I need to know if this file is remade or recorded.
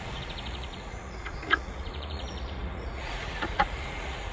remade